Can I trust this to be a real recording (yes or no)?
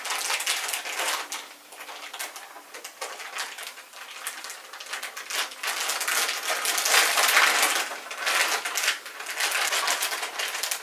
yes